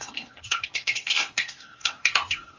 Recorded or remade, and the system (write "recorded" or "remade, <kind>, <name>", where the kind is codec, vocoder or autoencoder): remade, codec, SNAC